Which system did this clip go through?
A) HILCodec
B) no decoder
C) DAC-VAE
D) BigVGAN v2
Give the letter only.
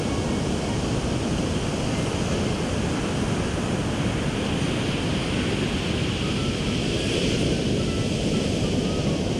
B